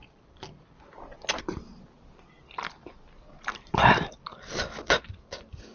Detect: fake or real real